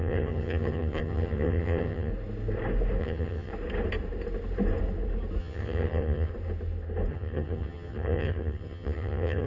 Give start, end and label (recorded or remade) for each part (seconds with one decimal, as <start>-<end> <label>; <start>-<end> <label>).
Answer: 0.0-2.1 remade; 2.1-3.0 recorded; 3.0-3.5 remade; 3.5-5.4 recorded; 5.4-6.3 remade; 6.3-7.1 recorded; 7.1-9.5 remade